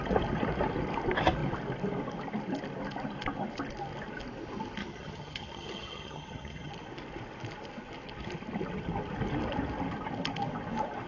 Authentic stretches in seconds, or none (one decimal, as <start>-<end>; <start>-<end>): 0.0-4.8; 6.7-11.1